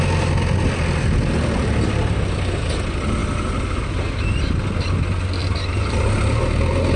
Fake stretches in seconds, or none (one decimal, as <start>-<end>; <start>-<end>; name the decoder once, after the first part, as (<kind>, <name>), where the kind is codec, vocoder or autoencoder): none